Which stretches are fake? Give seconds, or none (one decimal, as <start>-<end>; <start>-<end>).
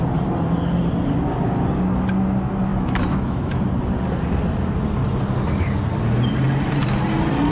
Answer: 2.7-3.6